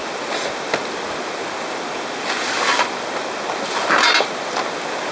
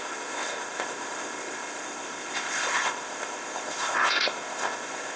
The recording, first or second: first